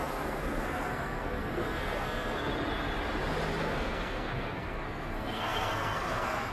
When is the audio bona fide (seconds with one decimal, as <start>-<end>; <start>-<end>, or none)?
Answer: 2.5-3.6